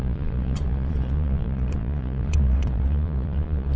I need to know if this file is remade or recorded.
remade